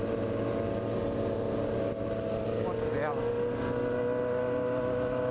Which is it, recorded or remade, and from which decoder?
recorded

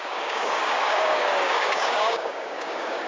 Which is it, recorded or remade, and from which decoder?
remade, codec, DAC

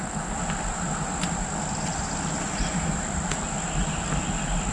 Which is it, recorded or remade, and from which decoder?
recorded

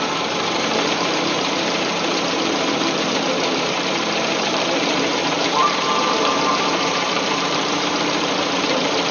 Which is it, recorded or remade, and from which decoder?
remade, vocoder, BigVGAN v2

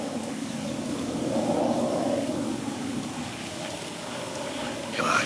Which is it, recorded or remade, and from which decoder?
remade, codec, DAC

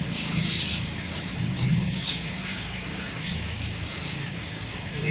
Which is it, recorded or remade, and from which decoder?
remade, codec, DAC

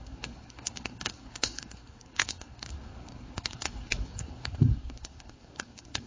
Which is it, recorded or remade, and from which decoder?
remade, codec, SNAC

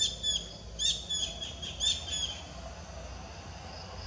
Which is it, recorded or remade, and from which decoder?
recorded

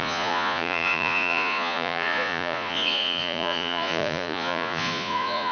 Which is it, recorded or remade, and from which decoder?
remade, vocoder, Vocos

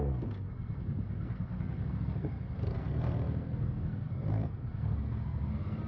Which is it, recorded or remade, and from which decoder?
remade, codec, SNAC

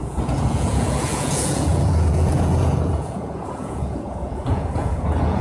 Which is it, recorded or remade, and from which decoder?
remade, vocoder, Vocos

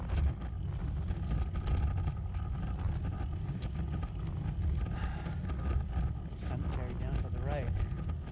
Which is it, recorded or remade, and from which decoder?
recorded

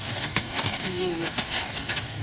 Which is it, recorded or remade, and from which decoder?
remade, codec, DAC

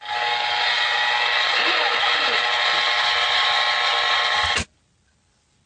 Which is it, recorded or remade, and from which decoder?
recorded